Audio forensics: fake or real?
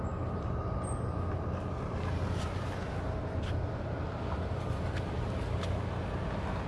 real